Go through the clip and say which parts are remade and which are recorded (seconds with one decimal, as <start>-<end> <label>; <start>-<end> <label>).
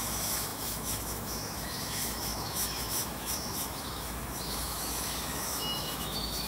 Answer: 0.0-6.5 remade